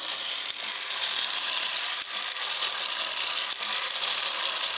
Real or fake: real